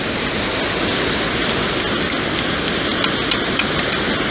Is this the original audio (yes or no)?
yes